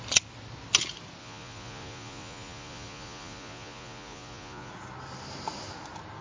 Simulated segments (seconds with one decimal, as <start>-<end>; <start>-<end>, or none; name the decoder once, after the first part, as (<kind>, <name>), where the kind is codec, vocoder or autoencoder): 1.2-4.7 (vocoder, Vocos)